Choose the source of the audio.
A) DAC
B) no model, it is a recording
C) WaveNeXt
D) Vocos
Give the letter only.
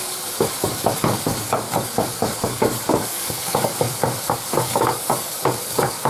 A